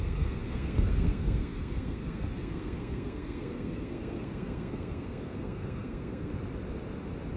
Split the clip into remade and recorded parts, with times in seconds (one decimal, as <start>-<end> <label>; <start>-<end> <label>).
0.0-6.3 remade; 6.3-7.4 recorded